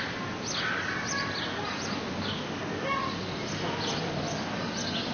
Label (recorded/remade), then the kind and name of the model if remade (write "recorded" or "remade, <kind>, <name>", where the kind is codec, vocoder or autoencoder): recorded